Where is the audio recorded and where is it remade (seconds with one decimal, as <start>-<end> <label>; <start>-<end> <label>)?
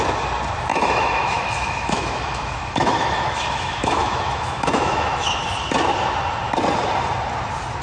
0.0-0.7 recorded; 0.7-5.4 remade; 5.4-7.8 recorded